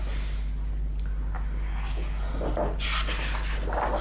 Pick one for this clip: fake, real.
real